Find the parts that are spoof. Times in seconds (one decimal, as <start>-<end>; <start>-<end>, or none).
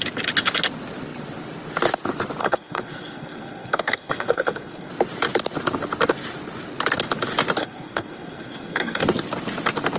2.4-4.9; 7.6-9.0